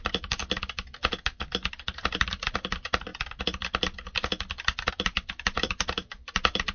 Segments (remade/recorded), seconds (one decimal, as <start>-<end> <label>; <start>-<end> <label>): 0.0-0.4 remade; 0.4-1.7 recorded; 1.7-3.1 remade; 3.1-4.9 recorded; 4.9-6.7 remade